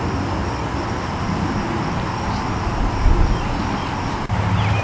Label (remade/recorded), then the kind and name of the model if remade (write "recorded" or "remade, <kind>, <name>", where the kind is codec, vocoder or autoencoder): recorded